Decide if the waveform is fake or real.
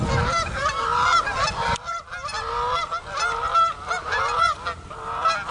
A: real